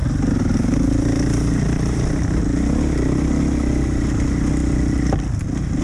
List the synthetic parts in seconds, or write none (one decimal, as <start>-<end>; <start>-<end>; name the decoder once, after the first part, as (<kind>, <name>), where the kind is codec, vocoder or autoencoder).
0.0-2.4 (vocoder, BigVGAN v2)

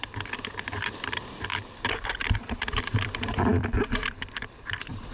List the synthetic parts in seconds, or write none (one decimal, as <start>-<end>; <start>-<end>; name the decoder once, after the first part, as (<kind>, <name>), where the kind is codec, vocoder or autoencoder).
0.0-5.1 (vocoder, BigVGAN v2)

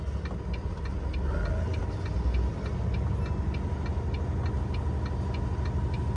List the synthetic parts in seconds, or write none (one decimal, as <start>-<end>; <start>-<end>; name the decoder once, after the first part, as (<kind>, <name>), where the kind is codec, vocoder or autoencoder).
none

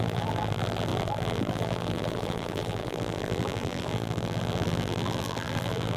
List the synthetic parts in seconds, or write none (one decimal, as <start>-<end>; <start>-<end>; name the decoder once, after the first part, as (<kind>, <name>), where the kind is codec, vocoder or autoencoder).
0.0-6.0 (vocoder, BigVGAN v2)

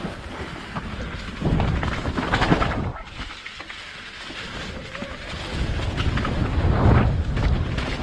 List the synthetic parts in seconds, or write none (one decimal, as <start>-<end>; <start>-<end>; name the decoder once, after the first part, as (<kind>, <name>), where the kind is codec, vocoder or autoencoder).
0.0-2.9 (vocoder, BigVGAN v2); 4.7-5.5; 6.3-8.0